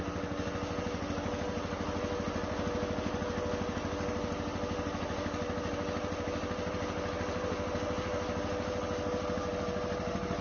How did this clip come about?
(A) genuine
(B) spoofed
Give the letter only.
A